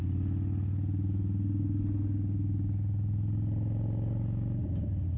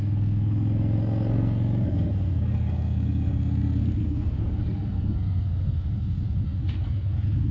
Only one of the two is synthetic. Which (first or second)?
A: second